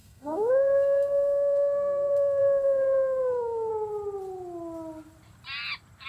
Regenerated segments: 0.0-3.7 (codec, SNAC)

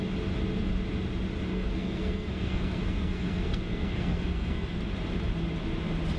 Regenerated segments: 1.5-4.8 (codec, SNAC)

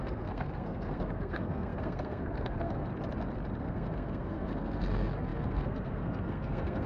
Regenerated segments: 0.0-2.9 (codec, SNAC); 3.6-6.9

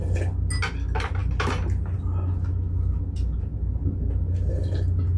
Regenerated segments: none